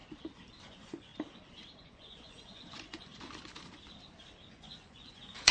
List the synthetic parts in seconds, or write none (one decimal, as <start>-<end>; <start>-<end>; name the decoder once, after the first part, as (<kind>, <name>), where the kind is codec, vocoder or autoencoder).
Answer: 0.6-1.1 (vocoder, Vocos); 1.8-3.1; 4.5-5.5

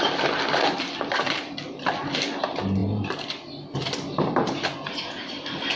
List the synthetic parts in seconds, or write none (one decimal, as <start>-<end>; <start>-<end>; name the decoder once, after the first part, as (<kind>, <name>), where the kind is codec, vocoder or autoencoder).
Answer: none

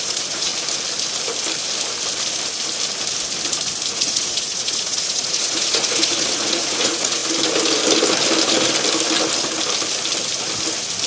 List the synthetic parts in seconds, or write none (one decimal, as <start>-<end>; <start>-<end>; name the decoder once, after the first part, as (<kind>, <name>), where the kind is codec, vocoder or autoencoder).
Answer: 0.0-0.5 (vocoder, Vocos); 3.9-7.2